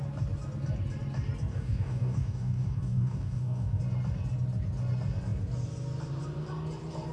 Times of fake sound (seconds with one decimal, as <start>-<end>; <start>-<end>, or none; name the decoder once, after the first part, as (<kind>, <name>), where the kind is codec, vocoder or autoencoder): 1.5-3.8 (codec, DAC)